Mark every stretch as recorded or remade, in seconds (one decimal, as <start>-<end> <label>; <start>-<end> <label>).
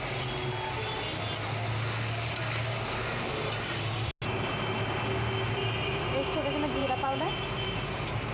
0.0-6.8 recorded; 6.8-7.3 remade; 7.3-8.3 recorded